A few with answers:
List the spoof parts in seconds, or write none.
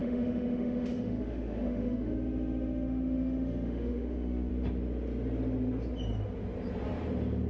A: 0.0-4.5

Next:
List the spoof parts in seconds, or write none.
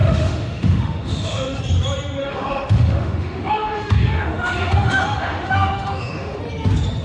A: 0.0-1.6; 2.2-6.4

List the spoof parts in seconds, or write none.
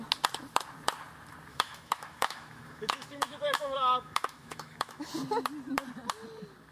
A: 1.5-5.1